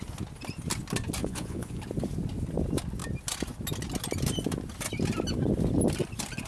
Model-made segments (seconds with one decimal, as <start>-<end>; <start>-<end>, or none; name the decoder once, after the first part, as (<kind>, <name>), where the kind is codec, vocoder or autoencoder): 1.2-1.8 (vocoder, Vocos)

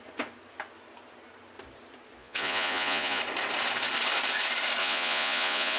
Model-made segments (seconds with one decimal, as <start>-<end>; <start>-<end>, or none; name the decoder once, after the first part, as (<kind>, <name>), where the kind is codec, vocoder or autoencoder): 2.2-3.2 (vocoder, Vocos); 4.8-5.8

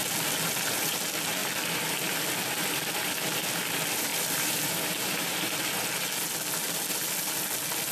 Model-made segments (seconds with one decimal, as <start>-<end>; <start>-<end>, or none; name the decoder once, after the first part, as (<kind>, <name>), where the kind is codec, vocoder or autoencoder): 0.0-0.9 (vocoder, BigVGAN v2); 4.1-4.7

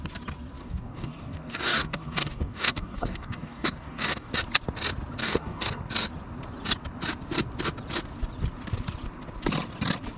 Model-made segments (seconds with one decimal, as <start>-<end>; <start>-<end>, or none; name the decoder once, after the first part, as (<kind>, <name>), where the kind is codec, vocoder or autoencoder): 0.6-4.3 (codec, DAC); 5.2-5.8

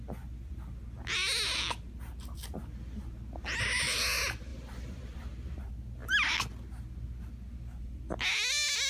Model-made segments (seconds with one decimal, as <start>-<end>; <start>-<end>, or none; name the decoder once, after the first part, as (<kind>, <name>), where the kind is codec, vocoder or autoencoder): 4.5-5.6 (vocoder, BigVGAN v2)

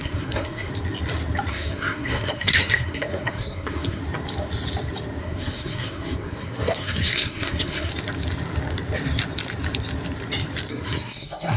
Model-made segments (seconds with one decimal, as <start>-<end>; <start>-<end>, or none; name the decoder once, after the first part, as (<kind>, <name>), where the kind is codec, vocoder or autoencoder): 0.0-0.7 (codec, SNAC); 1.5-4.0; 5.2-7.9; 10.7-11.6